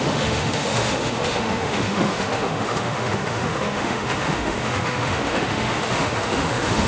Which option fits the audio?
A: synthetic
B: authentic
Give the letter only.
A